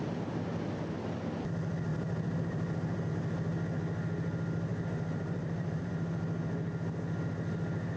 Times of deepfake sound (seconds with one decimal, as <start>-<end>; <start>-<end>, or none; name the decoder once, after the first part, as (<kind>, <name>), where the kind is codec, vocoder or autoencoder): 1.9-3.1 (vocoder, BigVGAN v2); 4.7-5.9